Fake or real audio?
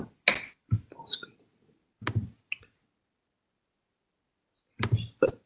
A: real